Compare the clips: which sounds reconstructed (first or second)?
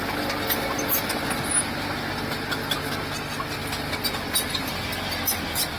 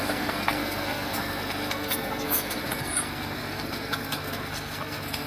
second